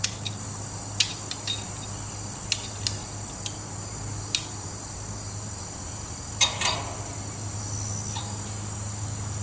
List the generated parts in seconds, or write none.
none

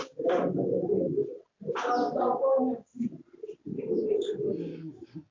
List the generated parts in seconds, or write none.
4.7-5.3

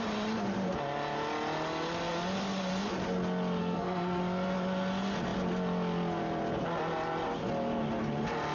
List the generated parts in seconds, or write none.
3.6-4.2